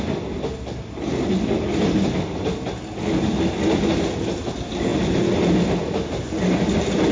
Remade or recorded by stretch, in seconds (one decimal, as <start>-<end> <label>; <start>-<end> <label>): 0.0-7.1 recorded